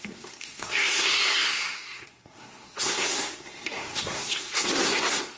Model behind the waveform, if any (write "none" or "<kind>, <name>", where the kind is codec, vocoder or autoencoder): codec, SNAC